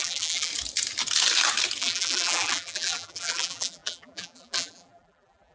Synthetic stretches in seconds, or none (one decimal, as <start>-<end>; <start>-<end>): 0.0-0.5; 1.8-5.5